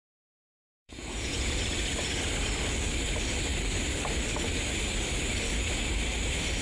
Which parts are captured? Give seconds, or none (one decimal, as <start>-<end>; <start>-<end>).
0.0-0.5; 1.5-6.6